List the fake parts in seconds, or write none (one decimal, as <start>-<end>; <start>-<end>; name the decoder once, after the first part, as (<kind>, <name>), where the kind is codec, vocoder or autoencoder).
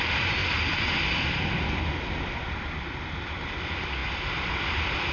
none